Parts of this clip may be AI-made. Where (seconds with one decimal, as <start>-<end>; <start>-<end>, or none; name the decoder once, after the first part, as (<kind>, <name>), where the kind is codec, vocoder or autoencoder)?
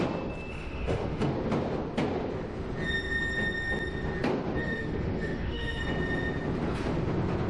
0.5-1.3 (autoencoder, DAC-VAE); 4.6-5.8